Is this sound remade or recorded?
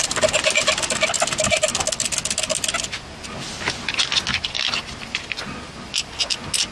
recorded